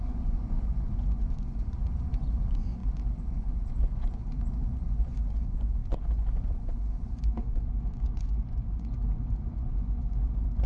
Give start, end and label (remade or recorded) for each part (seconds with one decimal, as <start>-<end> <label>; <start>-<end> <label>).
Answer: 0.0-10.7 remade

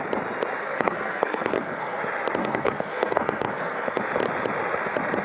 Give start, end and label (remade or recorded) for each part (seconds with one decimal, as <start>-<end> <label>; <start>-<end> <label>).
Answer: 0.0-0.6 recorded; 0.6-2.0 remade; 2.0-2.4 recorded; 2.4-4.0 remade; 4.0-5.2 recorded

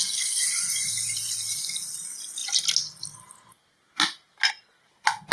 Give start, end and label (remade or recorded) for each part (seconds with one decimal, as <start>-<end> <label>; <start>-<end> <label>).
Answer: 0.0-5.3 recorded

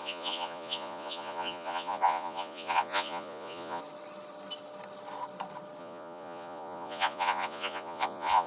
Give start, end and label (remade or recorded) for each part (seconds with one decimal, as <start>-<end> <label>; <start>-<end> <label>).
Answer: 0.0-3.8 remade; 3.8-5.8 recorded; 5.8-8.5 remade

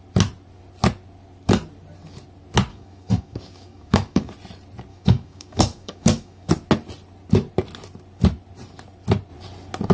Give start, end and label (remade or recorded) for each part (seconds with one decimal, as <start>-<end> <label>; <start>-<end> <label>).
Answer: 0.0-2.7 recorded; 2.7-4.3 remade; 4.3-4.9 recorded; 4.9-6.5 remade; 6.5-9.9 recorded

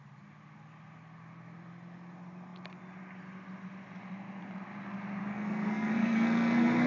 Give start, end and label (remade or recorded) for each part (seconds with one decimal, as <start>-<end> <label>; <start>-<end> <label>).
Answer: 0.0-5.3 recorded; 5.3-6.9 remade

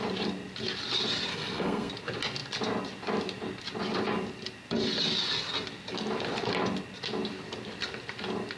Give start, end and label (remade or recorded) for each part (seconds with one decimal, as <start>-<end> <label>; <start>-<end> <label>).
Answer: 0.0-1.3 recorded; 1.3-1.9 remade; 1.9-8.6 recorded